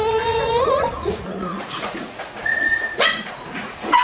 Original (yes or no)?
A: no